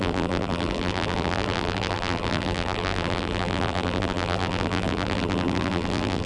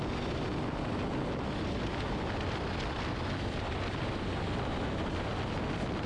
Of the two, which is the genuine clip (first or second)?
second